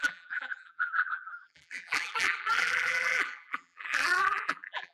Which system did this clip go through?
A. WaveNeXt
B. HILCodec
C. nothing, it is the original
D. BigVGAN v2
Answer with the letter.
D